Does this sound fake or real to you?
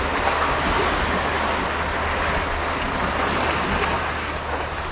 real